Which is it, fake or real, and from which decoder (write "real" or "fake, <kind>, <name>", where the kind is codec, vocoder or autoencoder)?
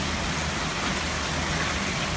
real